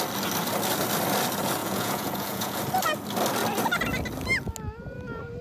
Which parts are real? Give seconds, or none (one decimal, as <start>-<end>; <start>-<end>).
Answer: 0.0-1.6; 2.6-5.4